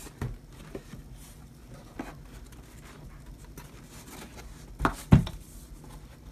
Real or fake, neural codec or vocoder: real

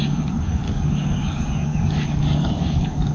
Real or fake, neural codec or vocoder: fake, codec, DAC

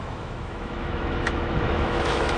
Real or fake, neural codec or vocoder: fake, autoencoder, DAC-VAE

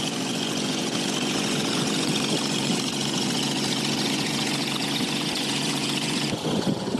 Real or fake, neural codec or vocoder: fake, vocoder, Vocos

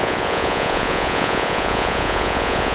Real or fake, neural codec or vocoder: fake, vocoder, Vocos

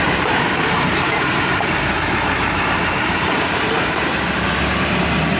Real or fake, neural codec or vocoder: fake, vocoder, BigVGAN v2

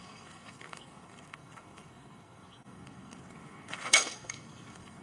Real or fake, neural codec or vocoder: fake, codec, SNAC